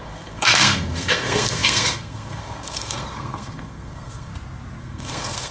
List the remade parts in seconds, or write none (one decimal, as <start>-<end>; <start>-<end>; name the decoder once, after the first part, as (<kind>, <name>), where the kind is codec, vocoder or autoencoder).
0.0-4.3 (codec, SNAC); 4.8-5.5